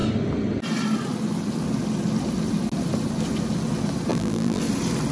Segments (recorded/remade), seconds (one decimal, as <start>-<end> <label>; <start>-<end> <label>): 0.0-4.1 recorded; 4.1-4.6 remade; 4.6-5.1 recorded